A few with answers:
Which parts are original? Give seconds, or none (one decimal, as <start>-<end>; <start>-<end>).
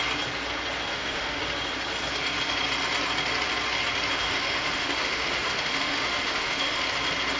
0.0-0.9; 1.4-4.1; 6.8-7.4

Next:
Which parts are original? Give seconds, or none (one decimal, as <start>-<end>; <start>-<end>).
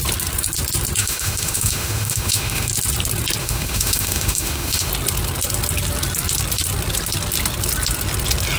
0.0-1.0; 2.7-3.4; 4.9-8.6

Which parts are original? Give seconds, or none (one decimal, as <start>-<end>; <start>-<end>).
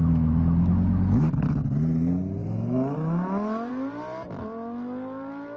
1.3-2.4; 3.7-5.6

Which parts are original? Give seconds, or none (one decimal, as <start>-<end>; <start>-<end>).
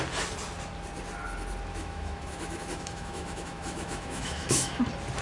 0.0-1.7; 4.8-5.2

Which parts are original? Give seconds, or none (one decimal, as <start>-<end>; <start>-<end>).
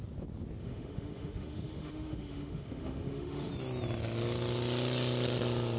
0.0-0.6; 3.5-5.8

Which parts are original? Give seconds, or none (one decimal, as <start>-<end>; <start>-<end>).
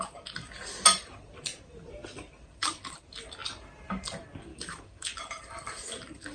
0.0-4.5; 5.2-6.3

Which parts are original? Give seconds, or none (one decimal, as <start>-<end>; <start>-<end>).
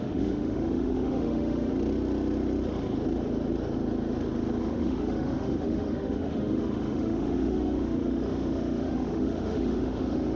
1.7-4.6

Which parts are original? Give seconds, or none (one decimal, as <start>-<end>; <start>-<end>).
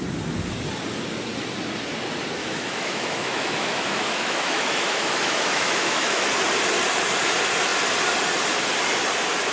0.0-2.4; 6.3-9.5